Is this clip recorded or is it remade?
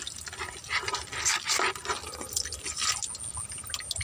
recorded